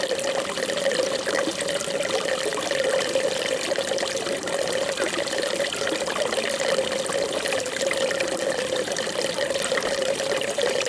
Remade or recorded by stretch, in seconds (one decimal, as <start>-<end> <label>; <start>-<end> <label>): 0.0-2.5 remade; 2.5-5.1 recorded; 5.1-10.9 remade